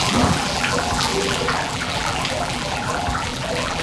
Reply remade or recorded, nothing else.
remade